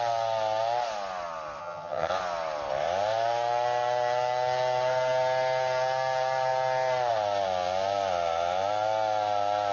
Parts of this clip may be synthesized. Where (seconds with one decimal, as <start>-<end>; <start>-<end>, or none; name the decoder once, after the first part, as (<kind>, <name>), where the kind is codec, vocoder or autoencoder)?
1.6-2.1 (vocoder, HiFi-GAN)